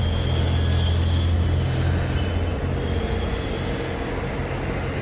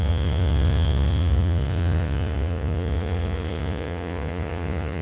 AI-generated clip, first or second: second